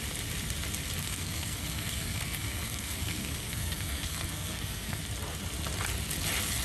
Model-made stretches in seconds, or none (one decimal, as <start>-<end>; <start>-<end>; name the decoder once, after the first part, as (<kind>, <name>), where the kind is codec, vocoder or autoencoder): 1.0-5.0 (codec, SNAC)